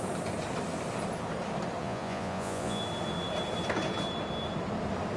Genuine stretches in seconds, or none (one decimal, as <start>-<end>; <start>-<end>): 0.0-1.8; 2.8-5.2